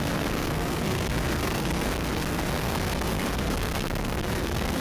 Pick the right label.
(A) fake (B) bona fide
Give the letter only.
A